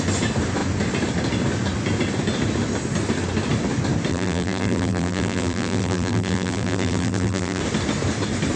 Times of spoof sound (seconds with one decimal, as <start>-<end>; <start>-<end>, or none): 4.1-7.6